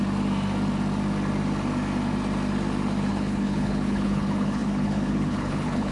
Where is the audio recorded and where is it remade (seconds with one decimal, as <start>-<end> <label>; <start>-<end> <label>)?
0.0-3.1 recorded; 3.1-5.9 remade